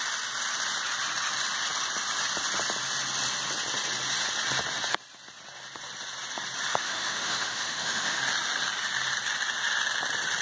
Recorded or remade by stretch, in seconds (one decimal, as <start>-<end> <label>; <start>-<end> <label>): 0.0-6.7 recorded; 6.7-8.2 remade; 8.2-10.4 recorded